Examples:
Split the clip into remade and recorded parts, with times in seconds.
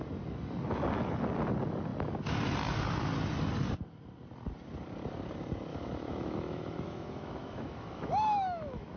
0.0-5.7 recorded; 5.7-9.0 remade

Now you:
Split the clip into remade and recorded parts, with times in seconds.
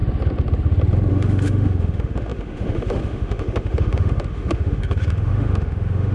0.0-1.1 recorded; 1.1-6.1 remade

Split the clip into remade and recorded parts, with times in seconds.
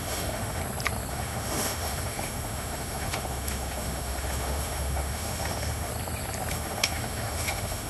0.0-0.6 remade; 0.6-1.1 recorded; 1.1-5.9 remade; 5.9-6.5 recorded; 6.5-7.9 remade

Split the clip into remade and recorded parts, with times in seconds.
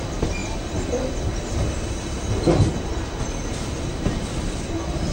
0.0-5.1 recorded